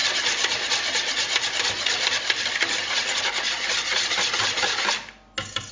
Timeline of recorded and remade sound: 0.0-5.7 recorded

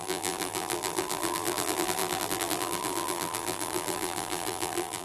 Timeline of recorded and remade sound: 0.0-5.0 remade